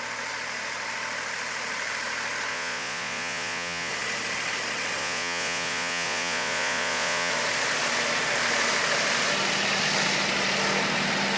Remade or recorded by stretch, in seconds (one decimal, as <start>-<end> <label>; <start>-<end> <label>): 0.0-2.5 recorded; 2.5-3.9 remade; 3.9-5.0 recorded; 5.0-7.3 remade; 7.3-11.4 recorded